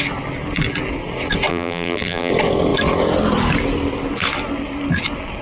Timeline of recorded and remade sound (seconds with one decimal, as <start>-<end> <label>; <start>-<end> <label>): 0.0-1.5 recorded; 1.5-2.3 remade; 2.3-5.4 recorded